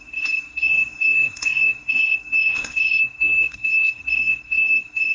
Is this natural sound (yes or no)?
no